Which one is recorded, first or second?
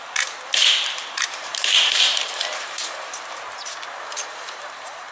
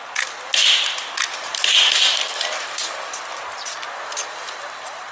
second